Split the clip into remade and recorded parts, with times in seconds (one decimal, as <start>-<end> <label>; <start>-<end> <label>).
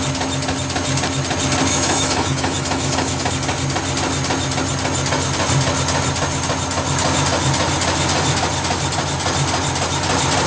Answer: 0.0-1.7 recorded; 1.7-3.3 remade; 3.3-10.5 recorded